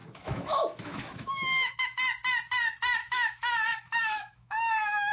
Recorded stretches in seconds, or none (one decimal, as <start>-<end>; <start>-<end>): 2.0-3.0